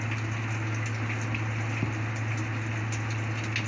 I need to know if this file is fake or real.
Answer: real